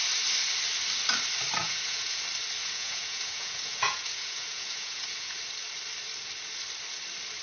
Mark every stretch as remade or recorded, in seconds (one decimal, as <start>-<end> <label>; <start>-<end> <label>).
0.0-1.6 recorded; 1.6-2.2 remade; 2.2-2.6 recorded; 2.6-5.4 remade; 5.4-7.4 recorded